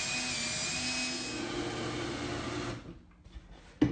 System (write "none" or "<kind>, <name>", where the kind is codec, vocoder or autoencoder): none